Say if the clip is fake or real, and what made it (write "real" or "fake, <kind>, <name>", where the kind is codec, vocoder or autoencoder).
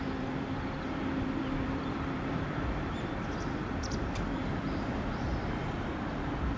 fake, vocoder, BigVGAN v2